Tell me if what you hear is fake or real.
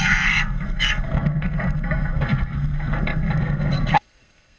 fake